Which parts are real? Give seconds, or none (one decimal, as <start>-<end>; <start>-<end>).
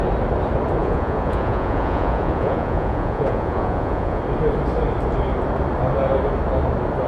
0.0-0.8; 4.2-7.1